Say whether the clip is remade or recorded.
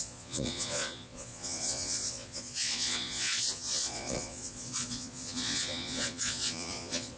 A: remade